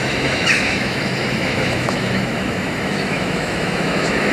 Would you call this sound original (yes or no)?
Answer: no